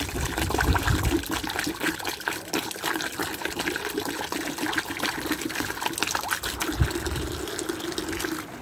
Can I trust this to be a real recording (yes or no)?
yes